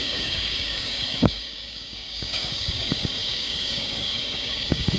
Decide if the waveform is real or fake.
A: fake